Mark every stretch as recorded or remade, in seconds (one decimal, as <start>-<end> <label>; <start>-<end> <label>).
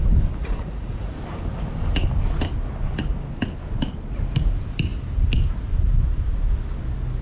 0.0-0.4 recorded; 0.4-1.1 remade; 1.1-7.2 recorded